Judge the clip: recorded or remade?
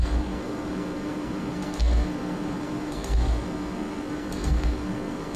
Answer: remade